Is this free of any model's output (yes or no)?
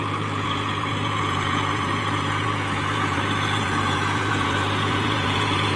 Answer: no